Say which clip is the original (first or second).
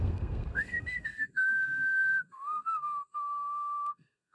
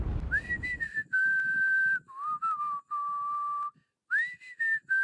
second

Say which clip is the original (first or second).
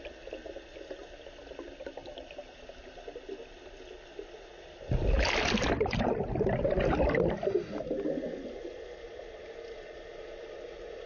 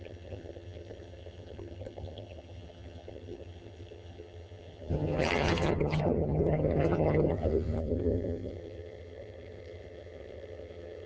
first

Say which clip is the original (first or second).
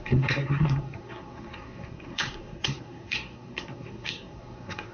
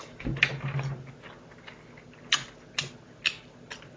second